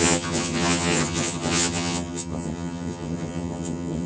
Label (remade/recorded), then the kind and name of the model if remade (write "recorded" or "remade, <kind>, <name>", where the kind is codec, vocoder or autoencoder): remade, vocoder, HiFi-GAN